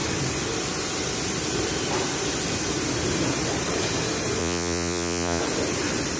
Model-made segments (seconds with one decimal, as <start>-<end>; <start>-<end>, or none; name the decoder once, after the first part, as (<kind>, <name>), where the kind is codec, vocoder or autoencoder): 4.4-5.4 (vocoder, Vocos)